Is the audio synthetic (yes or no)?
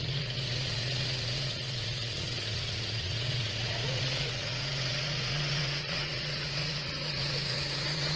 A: yes